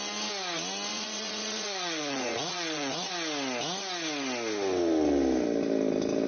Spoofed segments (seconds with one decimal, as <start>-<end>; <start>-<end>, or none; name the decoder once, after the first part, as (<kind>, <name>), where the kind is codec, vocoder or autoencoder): 0.9-3.1 (vocoder, Vocos)